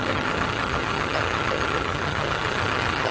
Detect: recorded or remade remade